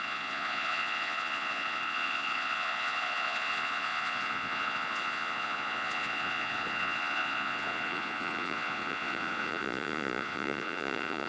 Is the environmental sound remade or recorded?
remade